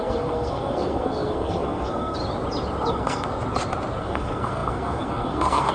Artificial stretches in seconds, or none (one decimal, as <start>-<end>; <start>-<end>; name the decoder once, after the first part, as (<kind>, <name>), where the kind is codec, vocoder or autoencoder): 0.0-2.2 (codec, SNAC); 2.9-3.3; 4.0-5.7